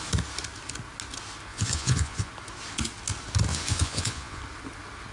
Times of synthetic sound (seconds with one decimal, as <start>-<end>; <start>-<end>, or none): 1.5-2.3; 3.5-4.4